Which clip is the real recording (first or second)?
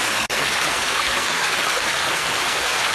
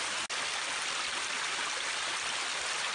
second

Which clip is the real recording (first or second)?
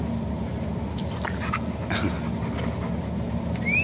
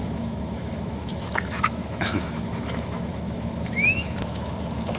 first